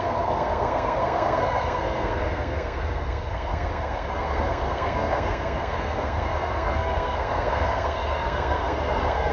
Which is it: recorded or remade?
remade